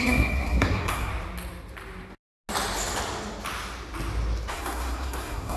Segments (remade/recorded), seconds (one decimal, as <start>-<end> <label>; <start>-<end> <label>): 0.0-1.1 remade; 1.1-4.5 recorded; 4.5-5.6 remade